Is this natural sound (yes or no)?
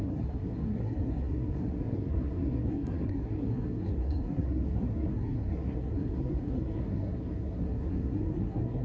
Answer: no